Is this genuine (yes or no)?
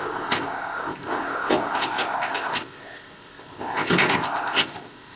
no